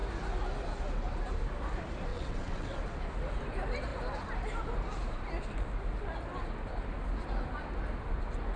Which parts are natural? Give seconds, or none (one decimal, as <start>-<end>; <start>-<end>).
0.0-2.1; 2.8-8.6